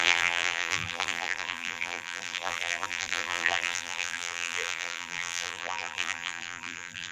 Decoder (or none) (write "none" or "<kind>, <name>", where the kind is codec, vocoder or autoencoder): vocoder, BigVGAN v2